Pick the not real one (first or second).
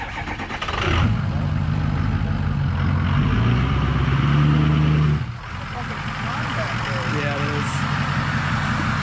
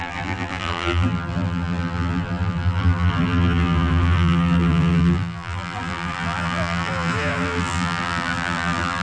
second